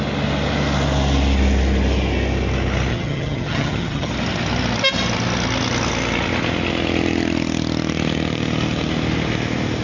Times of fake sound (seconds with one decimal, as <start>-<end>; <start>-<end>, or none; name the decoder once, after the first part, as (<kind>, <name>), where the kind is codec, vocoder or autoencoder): 2.9-4.1 (vocoder, HiFi-GAN)